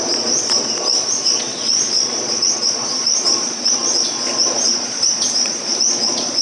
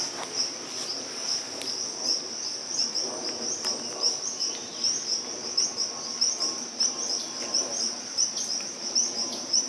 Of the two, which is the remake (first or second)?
first